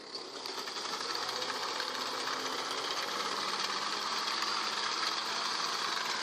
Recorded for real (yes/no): yes